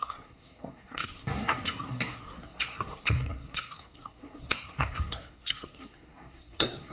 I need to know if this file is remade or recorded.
remade